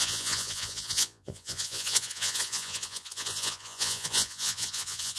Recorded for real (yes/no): no